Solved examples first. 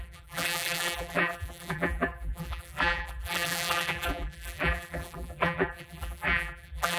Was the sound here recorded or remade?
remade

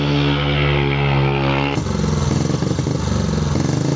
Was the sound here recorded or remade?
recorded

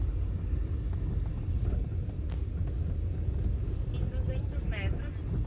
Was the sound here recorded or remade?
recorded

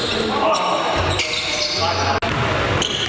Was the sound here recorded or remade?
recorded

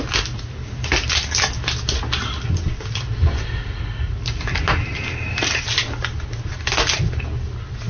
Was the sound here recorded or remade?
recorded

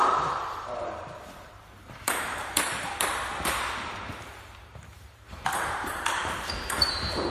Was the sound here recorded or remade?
remade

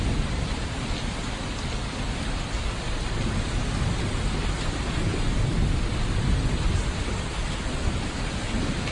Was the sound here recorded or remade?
recorded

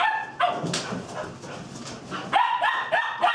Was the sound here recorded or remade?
recorded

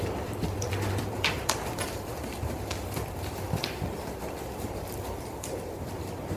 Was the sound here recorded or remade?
remade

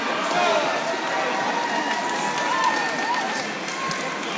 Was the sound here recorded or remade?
recorded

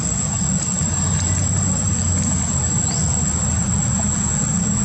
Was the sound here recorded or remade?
recorded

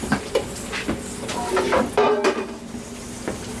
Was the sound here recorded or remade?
remade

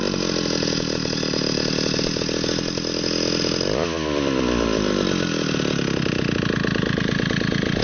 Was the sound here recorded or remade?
recorded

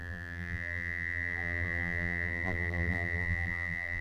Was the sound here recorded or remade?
remade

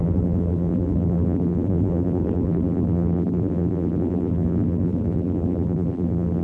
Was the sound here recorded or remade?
remade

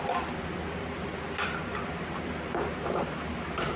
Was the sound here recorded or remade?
remade